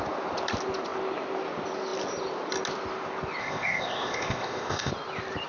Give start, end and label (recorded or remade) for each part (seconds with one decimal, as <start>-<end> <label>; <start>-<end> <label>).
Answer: 0.0-3.4 recorded; 3.4-4.9 remade; 4.9-5.5 recorded